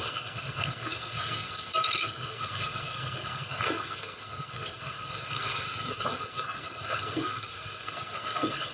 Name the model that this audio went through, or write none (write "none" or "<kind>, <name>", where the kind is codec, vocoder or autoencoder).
codec, SNAC